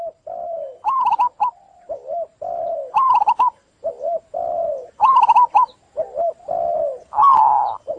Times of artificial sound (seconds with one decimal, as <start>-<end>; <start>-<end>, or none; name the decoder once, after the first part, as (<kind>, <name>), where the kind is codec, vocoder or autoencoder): none